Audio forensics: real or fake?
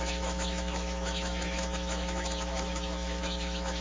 fake